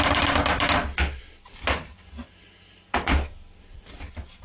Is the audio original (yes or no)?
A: yes